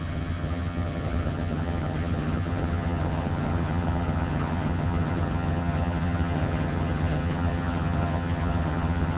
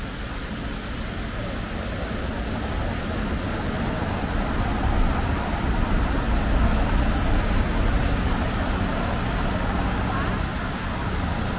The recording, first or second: second